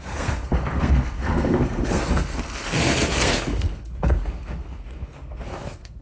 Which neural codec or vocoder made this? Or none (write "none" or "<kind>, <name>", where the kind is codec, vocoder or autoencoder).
codec, SNAC